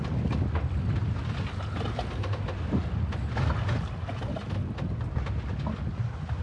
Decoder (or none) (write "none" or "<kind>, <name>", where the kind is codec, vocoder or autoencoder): none